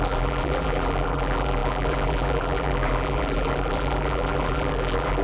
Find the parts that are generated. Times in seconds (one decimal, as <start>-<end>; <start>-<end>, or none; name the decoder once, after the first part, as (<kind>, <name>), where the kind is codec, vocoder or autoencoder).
0.0-5.2 (vocoder, BigVGAN v2)